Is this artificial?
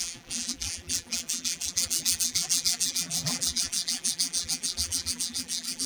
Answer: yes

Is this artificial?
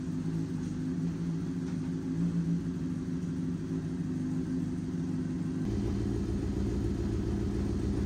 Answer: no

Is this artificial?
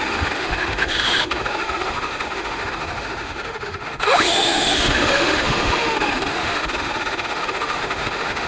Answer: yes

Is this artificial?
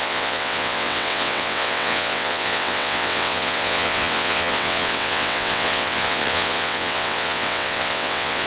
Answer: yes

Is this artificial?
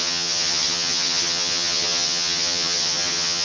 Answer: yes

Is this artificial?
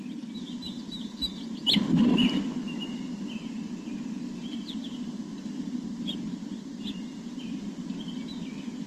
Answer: no